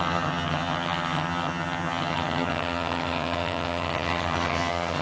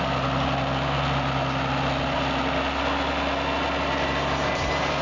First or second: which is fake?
first